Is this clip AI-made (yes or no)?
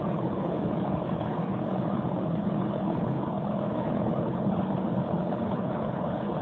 yes